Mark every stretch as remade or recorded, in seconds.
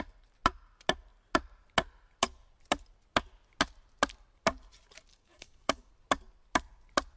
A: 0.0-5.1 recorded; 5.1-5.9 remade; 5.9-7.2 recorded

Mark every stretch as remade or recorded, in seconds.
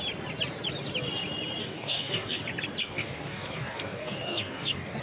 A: 0.0-1.6 recorded; 1.6-2.4 remade; 2.4-2.8 recorded; 2.8-5.0 remade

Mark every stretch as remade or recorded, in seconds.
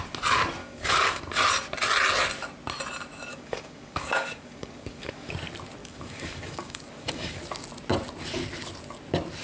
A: 0.0-0.6 recorded; 0.6-1.2 remade; 1.2-3.3 recorded; 3.3-5.3 remade; 5.3-5.8 recorded; 5.8-7.4 remade; 7.4-9.4 recorded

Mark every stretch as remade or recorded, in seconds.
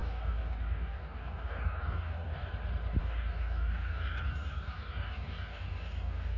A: 0.0-2.5 remade; 2.5-3.0 recorded; 3.0-6.4 remade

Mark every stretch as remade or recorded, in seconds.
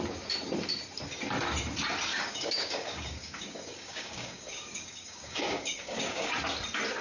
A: 0.0-2.1 recorded; 2.1-6.3 remade; 6.3-7.0 recorded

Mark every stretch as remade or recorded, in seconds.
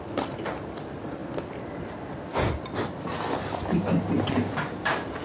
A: 0.0-5.2 recorded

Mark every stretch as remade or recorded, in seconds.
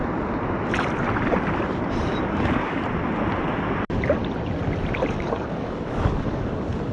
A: 0.0-2.2 recorded; 2.2-2.8 remade; 2.8-5.1 recorded; 5.1-6.9 remade